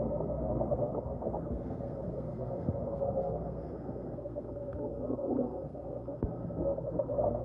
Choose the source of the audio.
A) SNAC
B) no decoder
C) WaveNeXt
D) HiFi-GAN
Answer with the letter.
A